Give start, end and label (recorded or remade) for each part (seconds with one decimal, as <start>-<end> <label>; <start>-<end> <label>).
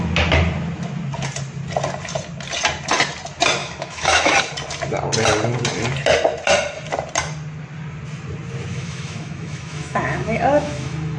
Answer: 0.0-3.6 recorded; 3.6-4.3 remade; 4.3-8.7 recorded; 8.7-11.2 remade